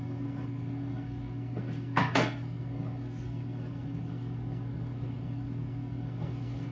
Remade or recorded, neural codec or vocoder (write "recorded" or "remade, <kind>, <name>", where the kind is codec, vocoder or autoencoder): remade, codec, SNAC